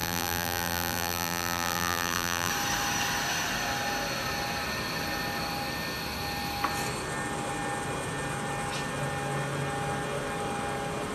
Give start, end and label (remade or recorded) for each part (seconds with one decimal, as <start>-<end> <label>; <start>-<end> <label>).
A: 0.0-2.5 remade; 2.5-11.1 recorded

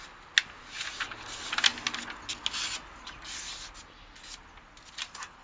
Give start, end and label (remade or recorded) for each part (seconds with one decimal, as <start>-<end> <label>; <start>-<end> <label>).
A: 0.0-5.4 recorded

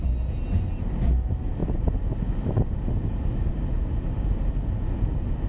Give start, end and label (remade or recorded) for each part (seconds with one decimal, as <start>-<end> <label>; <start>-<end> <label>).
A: 0.0-5.5 recorded